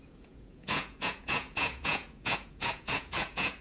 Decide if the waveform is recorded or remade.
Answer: remade